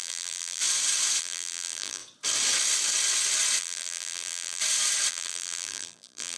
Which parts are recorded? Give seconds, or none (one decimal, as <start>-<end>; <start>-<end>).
0.6-1.2; 2.0-3.6; 4.6-5.1